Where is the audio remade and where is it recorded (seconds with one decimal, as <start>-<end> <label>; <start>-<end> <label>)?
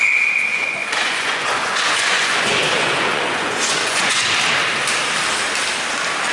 0.0-0.5 recorded; 0.5-4.3 remade; 4.3-6.3 recorded